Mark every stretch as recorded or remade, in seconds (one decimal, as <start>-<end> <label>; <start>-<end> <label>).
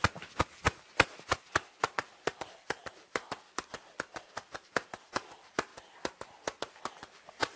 0.0-2.3 recorded; 2.3-5.7 remade; 5.7-6.8 recorded; 6.8-7.6 remade